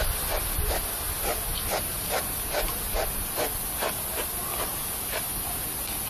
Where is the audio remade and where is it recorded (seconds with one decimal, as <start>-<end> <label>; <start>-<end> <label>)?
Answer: 0.0-6.1 recorded